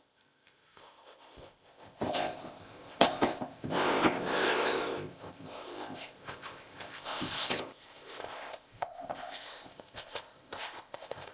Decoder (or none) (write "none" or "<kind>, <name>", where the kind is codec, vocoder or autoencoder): codec, ZipCodec